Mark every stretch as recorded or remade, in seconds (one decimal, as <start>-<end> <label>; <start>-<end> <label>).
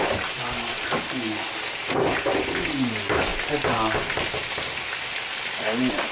0.0-6.1 recorded